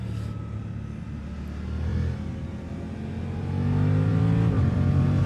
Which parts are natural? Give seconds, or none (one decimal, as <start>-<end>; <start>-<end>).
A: 0.0-4.1